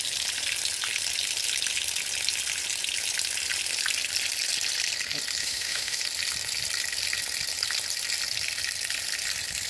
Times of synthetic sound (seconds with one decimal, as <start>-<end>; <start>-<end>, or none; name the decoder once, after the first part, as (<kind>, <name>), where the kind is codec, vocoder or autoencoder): 5.4-6.0 (autoencoder, DAC-VAE)